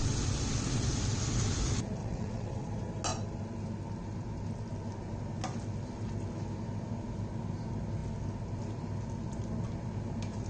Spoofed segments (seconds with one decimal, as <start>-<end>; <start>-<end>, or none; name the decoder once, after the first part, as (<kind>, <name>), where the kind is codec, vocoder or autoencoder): 2.0-2.7 (vocoder, WaveNeXt)